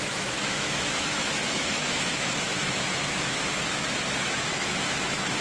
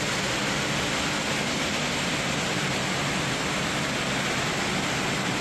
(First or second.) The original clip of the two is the second